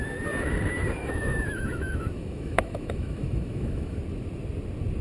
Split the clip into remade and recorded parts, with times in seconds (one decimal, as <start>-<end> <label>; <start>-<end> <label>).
0.0-1.0 recorded; 1.0-4.0 remade; 4.0-5.0 recorded